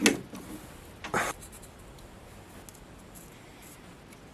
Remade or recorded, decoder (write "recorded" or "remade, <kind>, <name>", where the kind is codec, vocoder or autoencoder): recorded